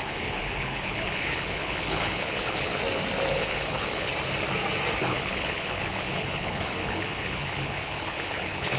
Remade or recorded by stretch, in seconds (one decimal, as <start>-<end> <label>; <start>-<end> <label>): 0.0-2.7 remade; 2.7-3.3 recorded; 3.3-4.1 remade; 4.1-5.0 recorded; 5.0-8.8 remade